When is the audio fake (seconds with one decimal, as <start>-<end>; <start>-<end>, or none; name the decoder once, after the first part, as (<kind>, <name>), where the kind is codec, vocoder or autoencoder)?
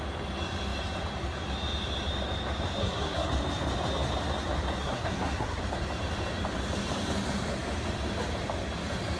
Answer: 2.8-3.3 (codec, SNAC); 4.8-5.6